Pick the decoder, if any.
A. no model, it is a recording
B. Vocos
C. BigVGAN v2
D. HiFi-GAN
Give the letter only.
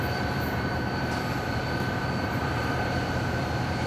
C